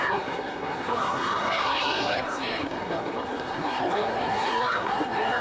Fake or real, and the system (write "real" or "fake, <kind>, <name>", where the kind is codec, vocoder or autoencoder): fake, codec, SNAC